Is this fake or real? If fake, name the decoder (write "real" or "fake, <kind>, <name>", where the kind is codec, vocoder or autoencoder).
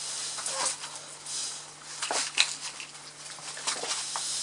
real